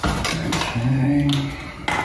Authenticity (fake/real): real